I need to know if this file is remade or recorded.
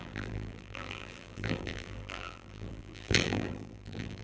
remade